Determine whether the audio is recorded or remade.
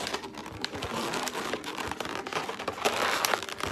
remade